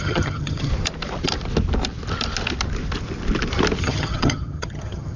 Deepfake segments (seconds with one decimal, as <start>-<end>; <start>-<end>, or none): 0.0-0.7; 3.8-5.2